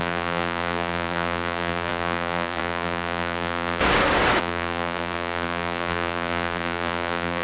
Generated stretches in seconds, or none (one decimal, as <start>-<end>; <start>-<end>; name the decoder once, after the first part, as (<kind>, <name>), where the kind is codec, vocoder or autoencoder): 0.0-3.8 (vocoder, BigVGAN v2); 4.4-7.4